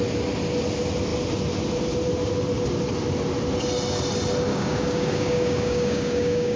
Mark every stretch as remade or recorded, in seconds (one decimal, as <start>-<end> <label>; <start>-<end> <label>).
0.0-4.5 recorded; 4.5-6.6 remade